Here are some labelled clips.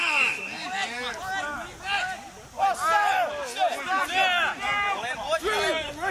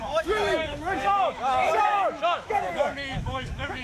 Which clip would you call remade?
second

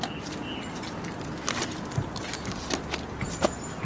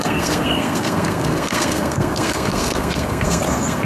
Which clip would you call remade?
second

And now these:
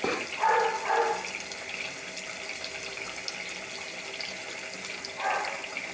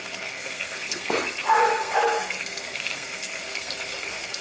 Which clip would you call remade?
second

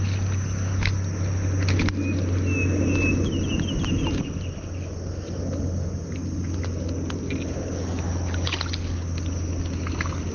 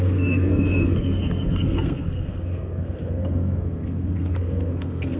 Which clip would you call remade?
second